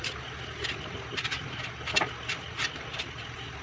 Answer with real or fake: real